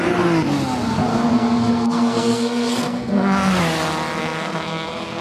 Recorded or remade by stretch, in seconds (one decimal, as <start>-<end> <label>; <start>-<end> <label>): 0.0-1.1 recorded; 1.1-3.6 remade; 3.6-4.2 recorded; 4.2-5.2 remade